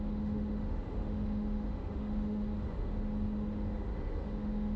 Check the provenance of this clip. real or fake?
fake